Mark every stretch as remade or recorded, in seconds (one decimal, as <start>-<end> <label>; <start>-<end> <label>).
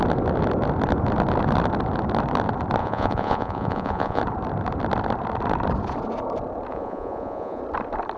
0.0-2.8 recorded; 2.8-4.2 remade; 4.2-6.7 recorded; 6.7-7.6 remade; 7.6-8.2 recorded